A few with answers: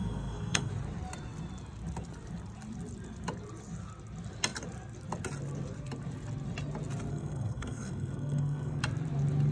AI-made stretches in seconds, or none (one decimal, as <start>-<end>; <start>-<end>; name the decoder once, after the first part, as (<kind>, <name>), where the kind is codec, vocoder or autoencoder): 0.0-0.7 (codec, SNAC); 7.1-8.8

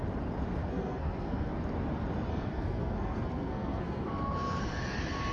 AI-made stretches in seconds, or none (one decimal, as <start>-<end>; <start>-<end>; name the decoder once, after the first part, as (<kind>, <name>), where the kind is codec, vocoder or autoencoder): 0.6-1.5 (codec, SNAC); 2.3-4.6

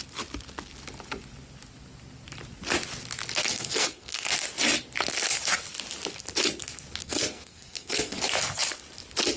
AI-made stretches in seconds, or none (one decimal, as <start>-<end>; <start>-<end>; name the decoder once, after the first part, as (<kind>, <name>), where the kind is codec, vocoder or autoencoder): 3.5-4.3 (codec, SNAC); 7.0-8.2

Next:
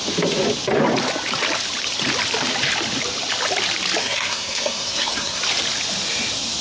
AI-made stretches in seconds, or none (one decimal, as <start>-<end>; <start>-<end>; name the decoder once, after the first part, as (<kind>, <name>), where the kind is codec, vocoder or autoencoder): 4.0-5.4 (codec, SNAC)